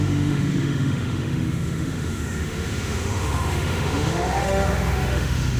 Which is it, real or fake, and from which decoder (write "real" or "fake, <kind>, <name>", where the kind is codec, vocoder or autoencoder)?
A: fake, autoencoder, DAC-VAE